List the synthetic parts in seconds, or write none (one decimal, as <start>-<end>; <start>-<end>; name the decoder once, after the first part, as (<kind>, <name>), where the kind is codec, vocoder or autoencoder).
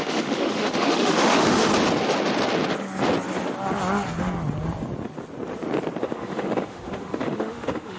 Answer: 0.0-1.7 (autoencoder, DAC-VAE); 6.0-8.0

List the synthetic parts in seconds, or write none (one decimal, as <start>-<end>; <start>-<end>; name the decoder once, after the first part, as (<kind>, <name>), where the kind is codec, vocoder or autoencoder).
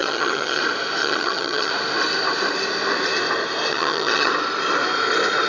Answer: 0.0-0.6 (vocoder, HiFi-GAN); 1.0-1.7; 3.7-4.3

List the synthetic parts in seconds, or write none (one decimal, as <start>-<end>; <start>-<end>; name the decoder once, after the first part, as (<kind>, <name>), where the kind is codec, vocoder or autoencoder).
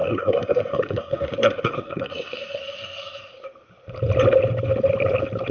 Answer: 0.0-3.3 (codec, SNAC)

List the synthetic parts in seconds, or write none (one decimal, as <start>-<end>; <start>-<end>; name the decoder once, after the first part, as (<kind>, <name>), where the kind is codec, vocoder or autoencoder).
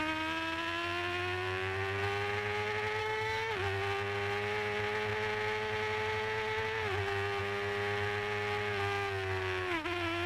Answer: 3.0-3.5 (codec, DAC)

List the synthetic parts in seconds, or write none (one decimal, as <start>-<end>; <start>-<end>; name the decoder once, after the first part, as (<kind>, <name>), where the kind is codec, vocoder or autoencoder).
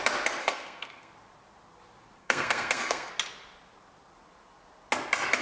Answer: 0.4-1.1 (codec, SNAC); 2.2-3.1